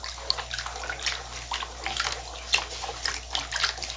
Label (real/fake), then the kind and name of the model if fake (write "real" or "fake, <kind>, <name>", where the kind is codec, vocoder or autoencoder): real